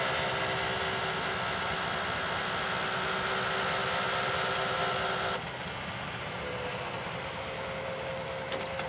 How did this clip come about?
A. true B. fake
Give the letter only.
A